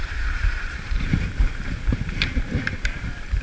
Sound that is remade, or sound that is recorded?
remade